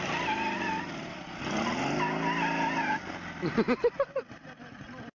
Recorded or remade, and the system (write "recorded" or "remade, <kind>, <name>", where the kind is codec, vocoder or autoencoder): recorded